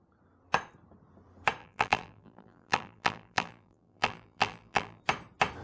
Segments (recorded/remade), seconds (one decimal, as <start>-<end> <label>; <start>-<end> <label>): 0.0-1.6 recorded; 1.6-5.0 remade; 5.0-5.6 recorded